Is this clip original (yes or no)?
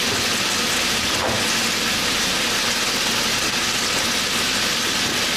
yes